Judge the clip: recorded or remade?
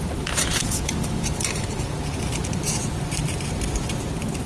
remade